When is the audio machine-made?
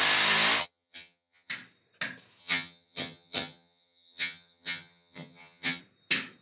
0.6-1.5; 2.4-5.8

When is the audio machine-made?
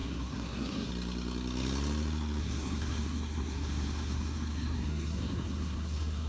0.0-0.9; 2.4-6.3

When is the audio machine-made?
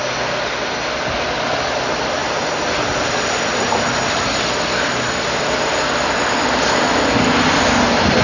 none